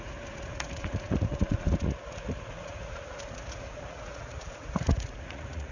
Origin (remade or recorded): remade